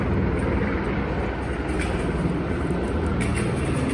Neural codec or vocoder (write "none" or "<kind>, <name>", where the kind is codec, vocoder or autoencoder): none